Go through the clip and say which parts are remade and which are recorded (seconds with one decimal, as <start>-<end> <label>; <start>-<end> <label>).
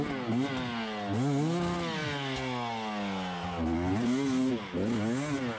0.0-5.6 recorded